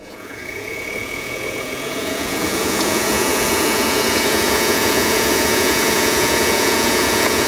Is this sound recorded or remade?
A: remade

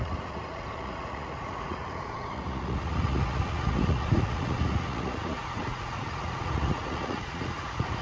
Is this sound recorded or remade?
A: remade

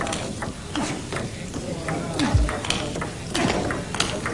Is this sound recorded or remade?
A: recorded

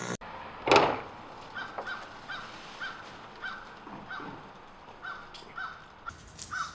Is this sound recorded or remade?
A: recorded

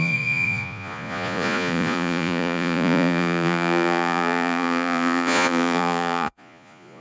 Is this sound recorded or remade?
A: remade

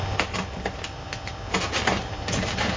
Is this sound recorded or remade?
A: recorded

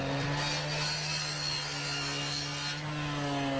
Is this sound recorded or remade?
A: recorded